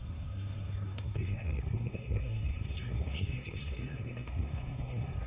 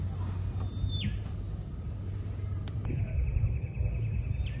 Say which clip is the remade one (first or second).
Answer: first